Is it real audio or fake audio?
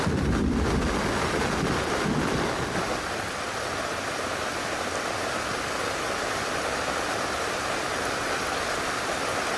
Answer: real